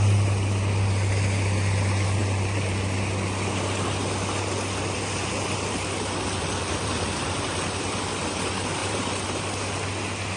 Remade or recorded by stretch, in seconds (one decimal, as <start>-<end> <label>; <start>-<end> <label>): 0.0-2.2 recorded; 2.2-3.0 remade; 3.0-8.8 recorded; 8.8-9.4 remade; 9.4-10.4 recorded